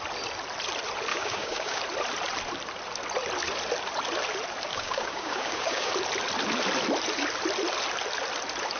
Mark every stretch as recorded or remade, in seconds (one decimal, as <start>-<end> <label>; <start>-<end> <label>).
0.0-1.1 recorded; 1.1-1.8 remade; 1.8-4.7 recorded; 4.7-5.9 remade; 5.9-8.8 recorded